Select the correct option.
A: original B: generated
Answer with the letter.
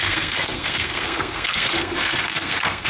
B